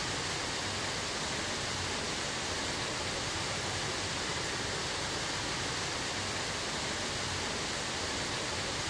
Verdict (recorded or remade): recorded